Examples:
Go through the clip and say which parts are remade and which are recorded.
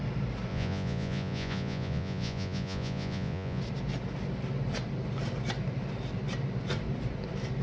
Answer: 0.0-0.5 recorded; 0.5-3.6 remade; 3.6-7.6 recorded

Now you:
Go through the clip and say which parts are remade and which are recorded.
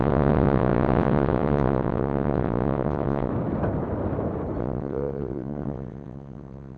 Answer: 0.0-3.3 remade; 3.3-4.6 recorded; 4.6-6.8 remade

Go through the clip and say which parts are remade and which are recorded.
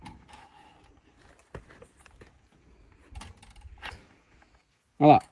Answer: 0.0-0.7 remade; 0.7-3.9 recorded; 3.9-5.3 remade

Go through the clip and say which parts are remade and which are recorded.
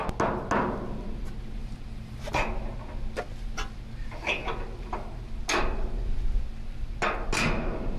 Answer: 0.0-1.6 recorded; 1.6-2.2 remade; 2.2-8.0 recorded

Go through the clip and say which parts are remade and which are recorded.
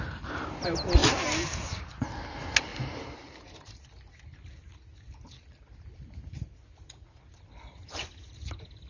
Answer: 0.0-1.0 recorded; 1.0-2.0 remade; 2.0-2.7 recorded; 2.7-3.8 remade; 3.8-8.9 recorded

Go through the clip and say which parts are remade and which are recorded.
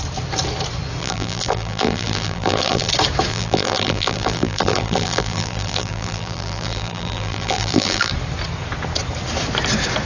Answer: 0.0-1.0 recorded; 1.0-2.9 remade; 2.9-3.3 recorded; 3.3-8.1 remade; 8.1-10.1 recorded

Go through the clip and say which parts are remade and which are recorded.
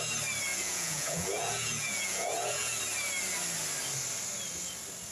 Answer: 0.0-0.5 recorded; 0.5-2.8 remade; 2.8-5.1 recorded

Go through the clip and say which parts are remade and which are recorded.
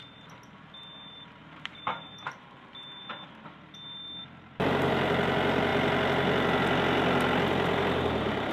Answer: 0.0-1.4 recorded; 1.4-3.1 remade; 3.1-8.5 recorded